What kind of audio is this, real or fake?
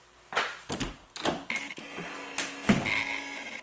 real